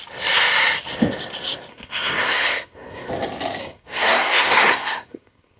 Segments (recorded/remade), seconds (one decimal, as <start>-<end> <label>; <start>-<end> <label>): 0.0-1.7 recorded; 1.7-3.1 remade; 3.1-3.6 recorded; 3.6-5.6 remade